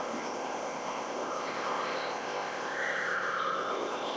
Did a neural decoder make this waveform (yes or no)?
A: yes